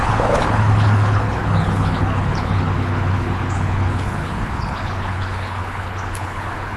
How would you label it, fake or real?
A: fake